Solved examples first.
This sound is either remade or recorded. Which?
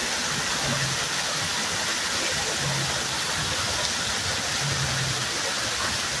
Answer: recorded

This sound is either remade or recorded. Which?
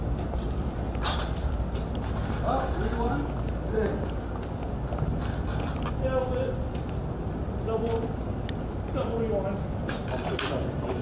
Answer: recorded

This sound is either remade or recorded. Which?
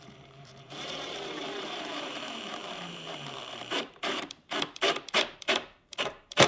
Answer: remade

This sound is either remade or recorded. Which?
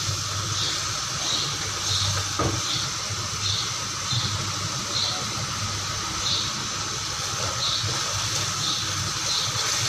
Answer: recorded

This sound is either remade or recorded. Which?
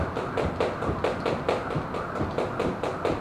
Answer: recorded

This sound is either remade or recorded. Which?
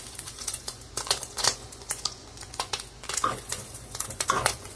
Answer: remade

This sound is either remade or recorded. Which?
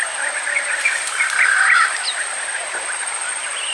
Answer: recorded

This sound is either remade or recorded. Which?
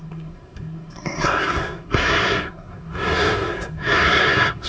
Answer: remade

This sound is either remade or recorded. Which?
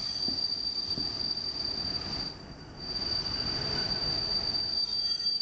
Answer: recorded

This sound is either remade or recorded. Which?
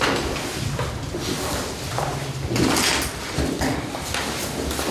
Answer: recorded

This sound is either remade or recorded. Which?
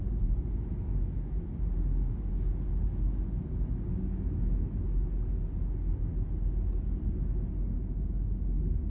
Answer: recorded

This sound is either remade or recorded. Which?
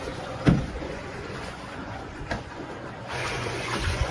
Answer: remade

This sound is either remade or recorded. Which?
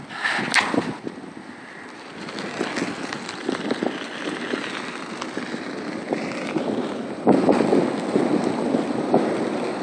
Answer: recorded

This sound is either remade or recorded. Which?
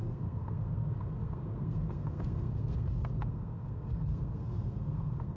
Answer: remade